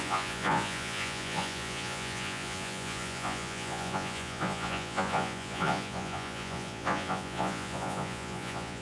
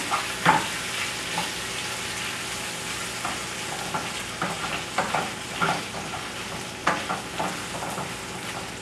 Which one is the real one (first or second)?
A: second